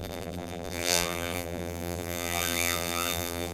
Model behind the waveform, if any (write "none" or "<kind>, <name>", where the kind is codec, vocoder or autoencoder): vocoder, BigVGAN v2